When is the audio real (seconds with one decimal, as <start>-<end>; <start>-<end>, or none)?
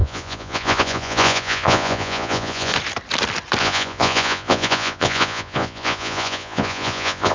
2.7-3.6